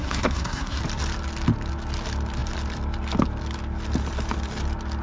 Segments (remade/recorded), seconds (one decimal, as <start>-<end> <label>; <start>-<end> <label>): 0.0-0.8 remade; 0.8-5.0 recorded